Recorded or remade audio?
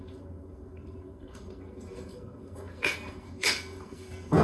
remade